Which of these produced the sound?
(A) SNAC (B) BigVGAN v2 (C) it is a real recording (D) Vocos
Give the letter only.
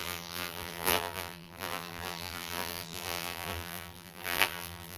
B